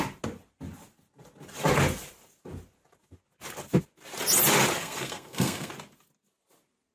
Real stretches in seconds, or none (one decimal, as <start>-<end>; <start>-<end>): 0.0-4.8; 5.7-6.9